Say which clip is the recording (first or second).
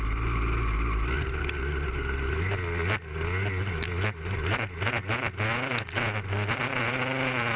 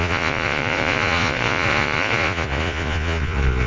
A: first